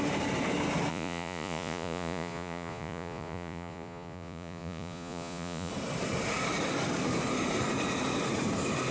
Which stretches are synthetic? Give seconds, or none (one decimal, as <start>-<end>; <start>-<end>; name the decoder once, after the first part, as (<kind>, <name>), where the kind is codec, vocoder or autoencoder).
0.9-5.7 (vocoder, Vocos)